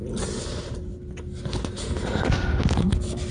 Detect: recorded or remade recorded